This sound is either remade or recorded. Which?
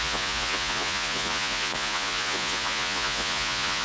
remade